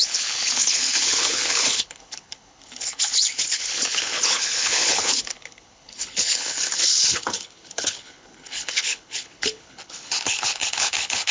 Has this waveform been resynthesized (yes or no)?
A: yes